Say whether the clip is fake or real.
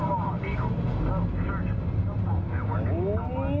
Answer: real